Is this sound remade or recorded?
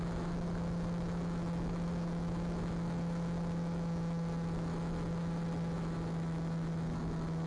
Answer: remade